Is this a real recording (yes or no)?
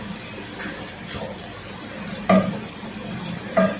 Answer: yes